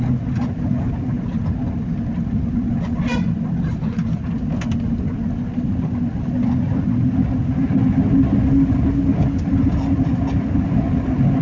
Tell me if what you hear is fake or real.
real